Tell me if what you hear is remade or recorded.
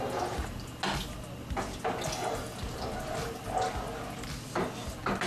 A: recorded